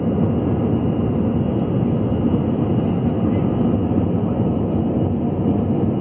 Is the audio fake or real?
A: real